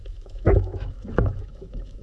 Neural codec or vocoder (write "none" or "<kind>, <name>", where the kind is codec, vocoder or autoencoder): autoencoder, DAC-VAE